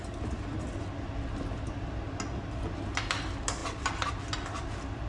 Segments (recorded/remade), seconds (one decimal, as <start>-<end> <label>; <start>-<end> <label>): 0.0-5.1 recorded